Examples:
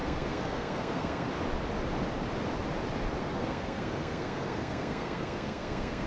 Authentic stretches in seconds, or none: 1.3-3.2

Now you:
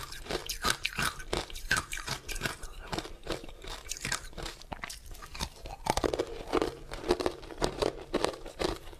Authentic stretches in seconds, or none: 0.4-1.4; 5.3-6.8

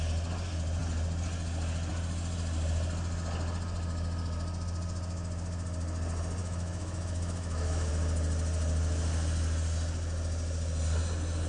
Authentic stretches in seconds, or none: 0.0-6.4; 7.9-11.5

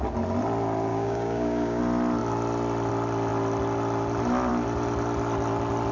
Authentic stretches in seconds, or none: 0.0-0.9; 1.8-5.9

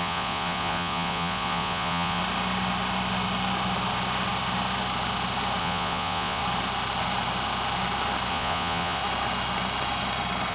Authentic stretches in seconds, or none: 2.2-5.6; 6.4-8.3; 9.0-10.5

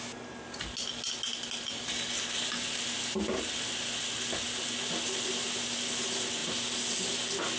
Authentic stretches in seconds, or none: 0.0-7.6